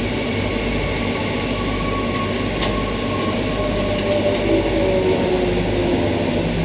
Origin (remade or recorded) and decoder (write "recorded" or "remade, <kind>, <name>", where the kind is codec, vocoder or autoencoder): recorded